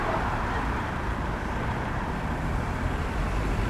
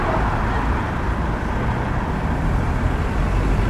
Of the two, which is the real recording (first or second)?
second